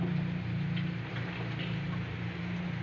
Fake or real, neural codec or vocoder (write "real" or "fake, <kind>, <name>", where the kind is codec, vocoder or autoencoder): real